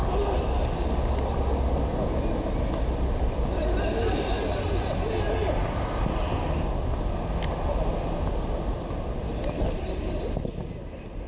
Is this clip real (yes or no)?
yes